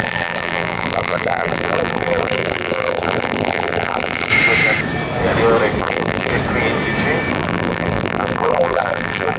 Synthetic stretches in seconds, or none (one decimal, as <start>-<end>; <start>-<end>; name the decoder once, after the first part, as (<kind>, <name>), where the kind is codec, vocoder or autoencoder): 0.0-4.3 (vocoder, BigVGAN v2); 5.8-6.3; 7.3-9.4

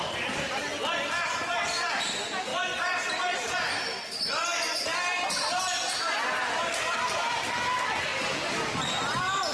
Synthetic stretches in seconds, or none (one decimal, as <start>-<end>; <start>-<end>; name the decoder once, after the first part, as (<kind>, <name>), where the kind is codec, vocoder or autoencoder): none

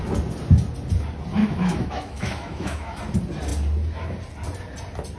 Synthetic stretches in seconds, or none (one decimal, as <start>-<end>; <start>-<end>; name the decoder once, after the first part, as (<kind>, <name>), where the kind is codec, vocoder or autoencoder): 1.4-3.0 (autoencoder, DAC-VAE)

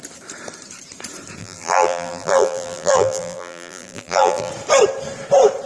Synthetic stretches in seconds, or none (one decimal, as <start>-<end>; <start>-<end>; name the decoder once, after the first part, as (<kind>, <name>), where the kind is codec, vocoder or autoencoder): 1.4-4.5 (vocoder, BigVGAN v2)

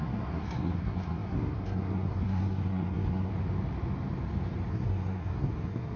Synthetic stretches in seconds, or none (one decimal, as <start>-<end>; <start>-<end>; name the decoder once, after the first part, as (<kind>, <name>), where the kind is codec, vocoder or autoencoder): 0.0-3.3 (codec, SNAC); 4.7-6.0

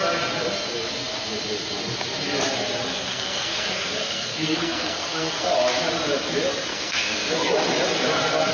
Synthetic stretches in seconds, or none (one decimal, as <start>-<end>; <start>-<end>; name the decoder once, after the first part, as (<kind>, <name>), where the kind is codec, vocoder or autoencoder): 2.9-5.5 (codec, SNAC); 6.7-7.5